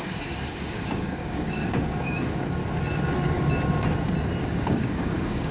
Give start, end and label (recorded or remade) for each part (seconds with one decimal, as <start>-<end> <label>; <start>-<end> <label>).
0.0-2.6 remade; 2.6-4.4 recorded; 4.4-5.5 remade